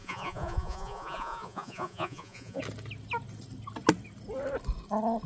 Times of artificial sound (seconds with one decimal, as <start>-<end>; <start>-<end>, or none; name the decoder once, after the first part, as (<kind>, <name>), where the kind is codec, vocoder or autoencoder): 0.0-2.6 (vocoder, Vocos)